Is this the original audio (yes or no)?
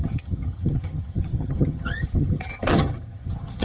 no